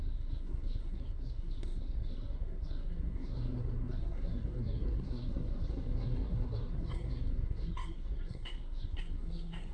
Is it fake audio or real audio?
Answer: fake